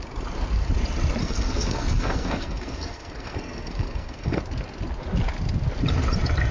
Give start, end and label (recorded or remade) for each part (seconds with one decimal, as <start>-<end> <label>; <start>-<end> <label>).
0.0-1.2 recorded; 1.2-4.4 remade; 4.4-6.5 recorded